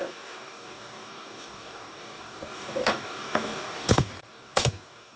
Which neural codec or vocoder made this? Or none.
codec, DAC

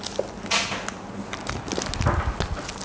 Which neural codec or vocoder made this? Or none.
none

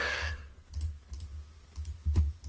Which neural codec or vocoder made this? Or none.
none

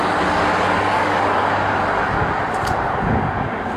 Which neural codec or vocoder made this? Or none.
codec, DAC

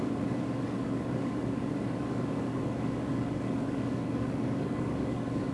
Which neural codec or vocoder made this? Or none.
codec, DAC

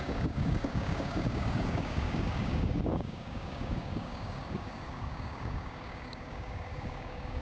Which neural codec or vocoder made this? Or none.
codec, DAC